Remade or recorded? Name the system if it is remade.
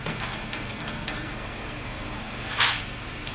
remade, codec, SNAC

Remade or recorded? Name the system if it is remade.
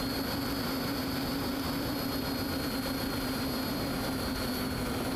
remade, vocoder, BigVGAN v2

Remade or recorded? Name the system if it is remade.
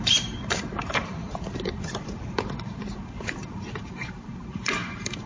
remade, vocoder, BigVGAN v2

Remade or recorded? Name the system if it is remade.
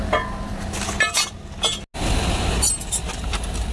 recorded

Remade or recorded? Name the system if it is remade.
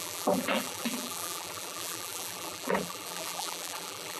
remade, vocoder, BigVGAN v2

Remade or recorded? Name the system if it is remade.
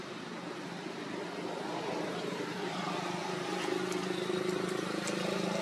recorded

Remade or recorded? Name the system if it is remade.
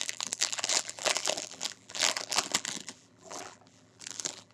remade, vocoder, BigVGAN v2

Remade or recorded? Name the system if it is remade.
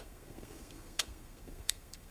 remade, codec, SNAC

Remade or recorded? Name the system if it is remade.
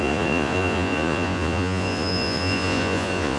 remade, vocoder, Vocos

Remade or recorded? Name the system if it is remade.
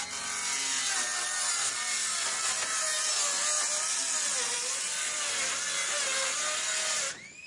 recorded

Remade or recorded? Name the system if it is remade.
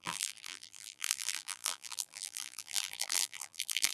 remade, vocoder, BigVGAN v2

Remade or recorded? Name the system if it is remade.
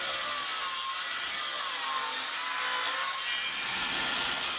recorded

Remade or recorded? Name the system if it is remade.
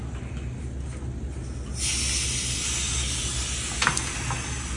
recorded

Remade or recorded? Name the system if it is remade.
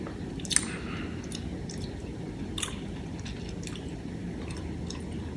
recorded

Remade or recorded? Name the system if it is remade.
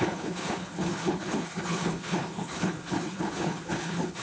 remade, codec, HILCodec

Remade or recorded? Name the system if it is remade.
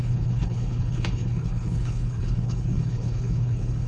remade, codec, HILCodec